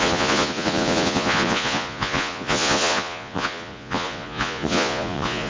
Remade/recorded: remade